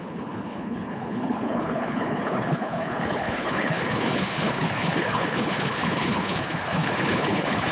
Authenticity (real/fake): fake